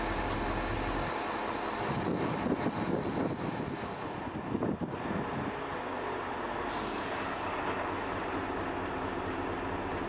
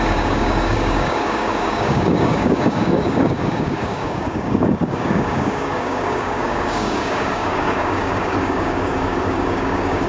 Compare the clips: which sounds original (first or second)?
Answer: first